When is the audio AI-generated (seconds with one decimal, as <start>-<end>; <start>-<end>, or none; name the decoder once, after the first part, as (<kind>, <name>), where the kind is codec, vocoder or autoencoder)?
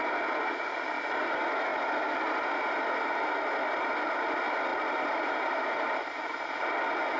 4.7-6.6 (vocoder, BigVGAN v2)